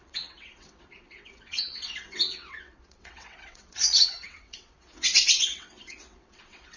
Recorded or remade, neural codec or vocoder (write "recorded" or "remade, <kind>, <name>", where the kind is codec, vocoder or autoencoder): remade, vocoder, WaveNeXt